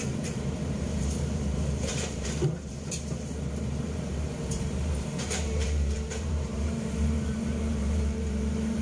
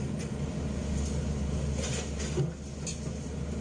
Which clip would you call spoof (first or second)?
first